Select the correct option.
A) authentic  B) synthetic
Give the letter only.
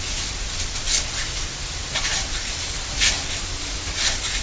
A